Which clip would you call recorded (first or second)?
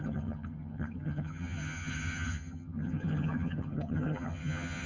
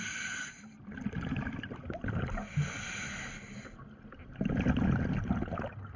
second